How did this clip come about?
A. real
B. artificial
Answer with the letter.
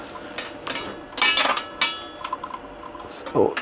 A